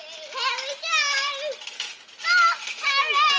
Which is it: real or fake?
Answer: real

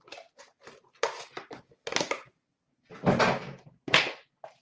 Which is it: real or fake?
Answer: real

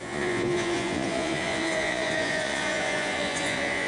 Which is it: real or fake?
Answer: fake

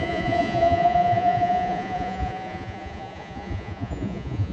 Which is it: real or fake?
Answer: fake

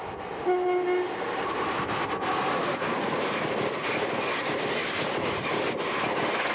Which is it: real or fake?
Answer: real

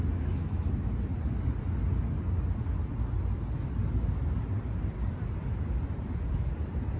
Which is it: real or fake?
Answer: real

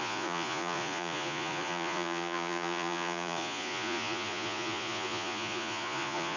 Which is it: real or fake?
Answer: fake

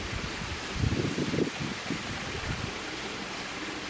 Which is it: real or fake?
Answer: real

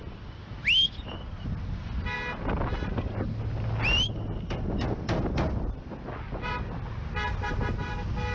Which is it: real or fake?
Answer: real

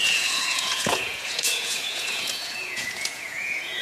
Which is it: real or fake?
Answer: fake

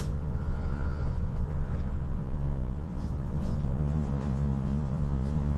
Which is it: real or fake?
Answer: fake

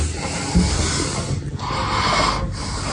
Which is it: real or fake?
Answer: real